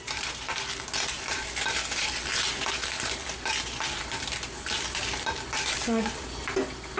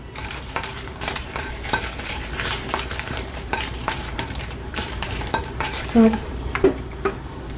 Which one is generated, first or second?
second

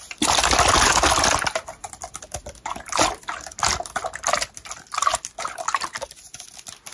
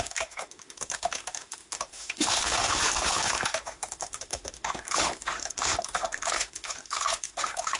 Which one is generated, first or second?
second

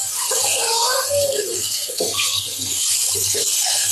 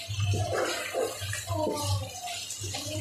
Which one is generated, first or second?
first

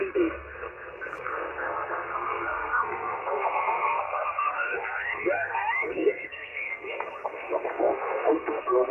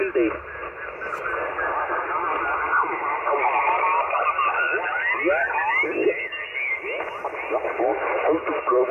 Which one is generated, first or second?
first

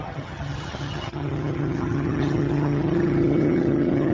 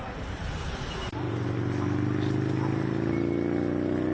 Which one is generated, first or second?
first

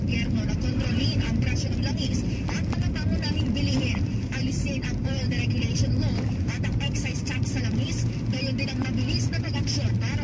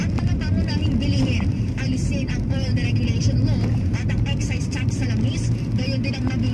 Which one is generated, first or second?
first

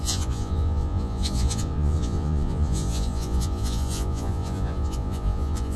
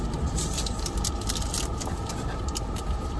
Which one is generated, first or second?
first